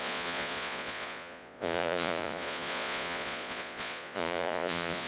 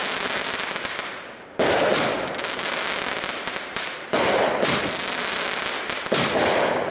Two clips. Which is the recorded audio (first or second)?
second